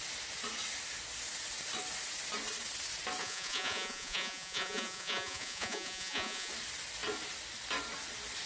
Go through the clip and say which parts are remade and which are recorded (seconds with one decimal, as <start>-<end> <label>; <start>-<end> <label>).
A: 0.0-3.2 recorded; 3.2-6.5 remade; 6.5-8.5 recorded